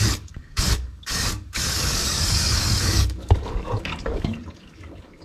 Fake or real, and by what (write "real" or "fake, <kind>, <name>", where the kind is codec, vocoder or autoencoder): fake, codec, DAC